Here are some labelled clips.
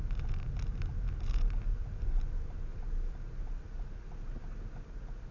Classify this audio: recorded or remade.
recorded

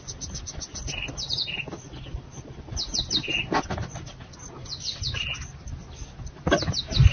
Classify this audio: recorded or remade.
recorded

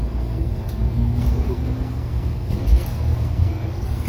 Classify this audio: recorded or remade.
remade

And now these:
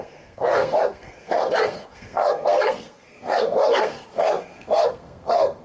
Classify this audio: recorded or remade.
remade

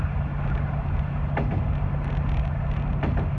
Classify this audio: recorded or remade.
recorded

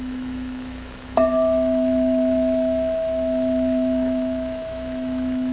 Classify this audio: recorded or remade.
remade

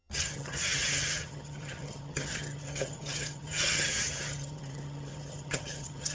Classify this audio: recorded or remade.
remade